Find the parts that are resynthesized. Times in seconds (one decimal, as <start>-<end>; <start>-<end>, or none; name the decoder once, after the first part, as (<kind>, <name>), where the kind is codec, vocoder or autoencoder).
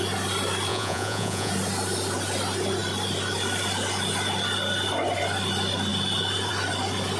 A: 0.7-1.5 (vocoder, Vocos)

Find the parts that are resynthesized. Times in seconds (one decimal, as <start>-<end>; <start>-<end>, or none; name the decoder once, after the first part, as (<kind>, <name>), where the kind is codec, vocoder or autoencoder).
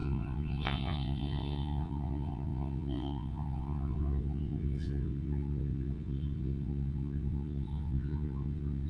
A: 0.0-8.9 (vocoder, WaveNeXt)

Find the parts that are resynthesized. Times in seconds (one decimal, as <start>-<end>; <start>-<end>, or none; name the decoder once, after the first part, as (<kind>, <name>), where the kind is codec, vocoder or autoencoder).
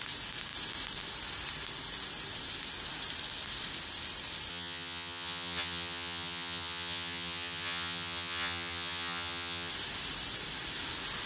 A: 4.5-9.7 (vocoder, HiFi-GAN)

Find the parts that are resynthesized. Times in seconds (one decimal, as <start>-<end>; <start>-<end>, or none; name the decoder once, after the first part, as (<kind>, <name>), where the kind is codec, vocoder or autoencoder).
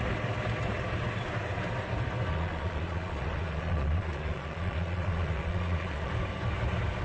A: 2.3-6.1 (vocoder, Vocos)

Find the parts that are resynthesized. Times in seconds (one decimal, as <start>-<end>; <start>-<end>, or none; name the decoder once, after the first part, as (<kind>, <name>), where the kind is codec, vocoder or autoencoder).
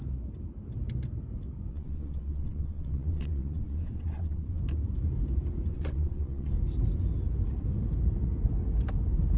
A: 1.7-4.6 (vocoder, WaveNeXt); 5.7-6.5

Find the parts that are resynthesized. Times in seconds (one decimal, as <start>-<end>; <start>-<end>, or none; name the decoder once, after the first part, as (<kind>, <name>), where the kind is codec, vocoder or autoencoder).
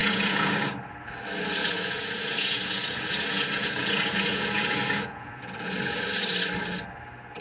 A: 0.0-0.6 (vocoder, Vocos); 1.6-6.0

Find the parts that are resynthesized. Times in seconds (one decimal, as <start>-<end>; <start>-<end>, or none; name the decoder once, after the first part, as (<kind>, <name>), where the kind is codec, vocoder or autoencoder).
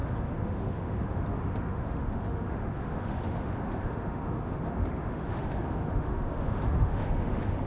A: 0.0-7.7 (autoencoder, DAC-VAE)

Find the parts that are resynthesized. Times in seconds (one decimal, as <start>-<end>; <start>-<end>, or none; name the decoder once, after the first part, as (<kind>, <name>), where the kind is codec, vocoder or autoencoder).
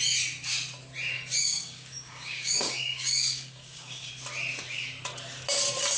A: 1.4-4.1 (codec, DAC)